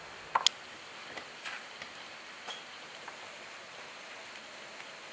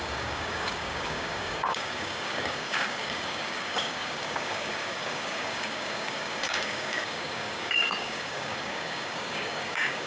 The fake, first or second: second